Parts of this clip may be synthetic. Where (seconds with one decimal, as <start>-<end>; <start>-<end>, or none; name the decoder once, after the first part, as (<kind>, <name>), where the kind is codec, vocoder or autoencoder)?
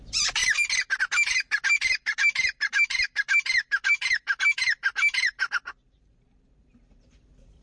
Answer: 0.0-0.4 (vocoder, BigVGAN v2); 1.0-7.6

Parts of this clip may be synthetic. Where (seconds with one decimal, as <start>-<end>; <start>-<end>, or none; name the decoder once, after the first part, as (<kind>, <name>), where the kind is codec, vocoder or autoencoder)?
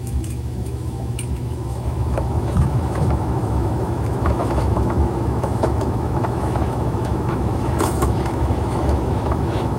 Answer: 0.0-9.8 (autoencoder, DAC-VAE)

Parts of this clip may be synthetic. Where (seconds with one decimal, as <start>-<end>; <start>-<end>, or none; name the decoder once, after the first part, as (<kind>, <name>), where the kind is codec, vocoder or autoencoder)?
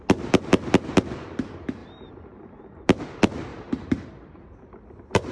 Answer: 1.8-3.0 (vocoder, BigVGAN v2); 3.5-5.3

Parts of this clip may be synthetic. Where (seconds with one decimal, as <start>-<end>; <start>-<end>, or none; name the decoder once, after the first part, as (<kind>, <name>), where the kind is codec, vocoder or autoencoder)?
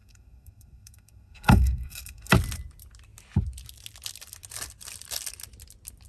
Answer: 0.0-2.3 (codec, SNAC)